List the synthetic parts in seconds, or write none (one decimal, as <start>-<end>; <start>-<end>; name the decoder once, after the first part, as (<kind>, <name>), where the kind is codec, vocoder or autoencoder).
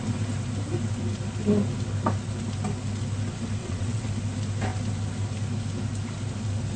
3.6-4.1 (vocoder, WaveNeXt)